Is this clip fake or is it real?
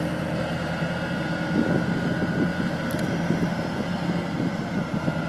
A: real